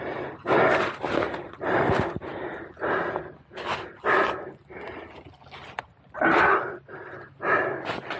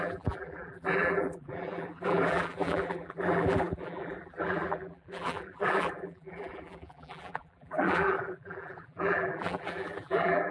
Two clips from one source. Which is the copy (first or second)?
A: second